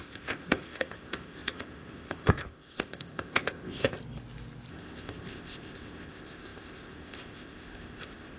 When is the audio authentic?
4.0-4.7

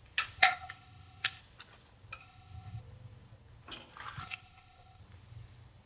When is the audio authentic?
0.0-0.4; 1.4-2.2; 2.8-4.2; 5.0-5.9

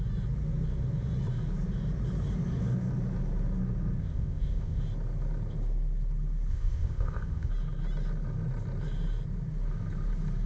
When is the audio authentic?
0.0-4.0; 4.8-6.5; 7.5-10.5